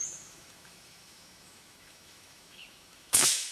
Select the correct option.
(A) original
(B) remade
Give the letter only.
B